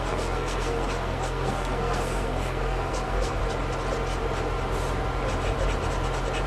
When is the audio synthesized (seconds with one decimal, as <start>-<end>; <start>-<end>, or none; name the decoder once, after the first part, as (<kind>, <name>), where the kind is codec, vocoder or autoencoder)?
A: 0.0-3.4 (codec, SNAC)